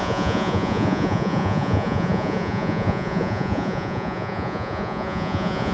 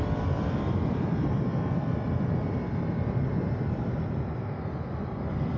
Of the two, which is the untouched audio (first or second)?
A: second